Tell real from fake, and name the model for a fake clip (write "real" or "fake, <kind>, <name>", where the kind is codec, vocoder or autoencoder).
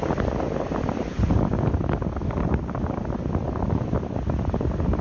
real